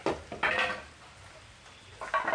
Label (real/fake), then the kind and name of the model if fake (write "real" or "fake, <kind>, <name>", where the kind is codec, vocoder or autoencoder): real